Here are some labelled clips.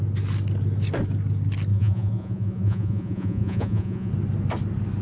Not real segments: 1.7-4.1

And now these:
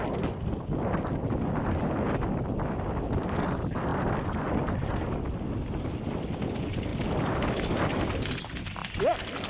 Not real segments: 6.9-8.0; 8.8-9.5

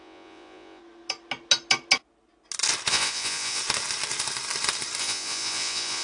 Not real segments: 0.0-0.8; 2.9-3.6; 5.0-6.0